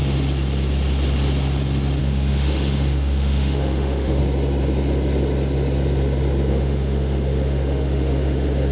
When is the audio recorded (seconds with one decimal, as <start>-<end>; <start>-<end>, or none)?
0.0-2.0; 4.2-6.5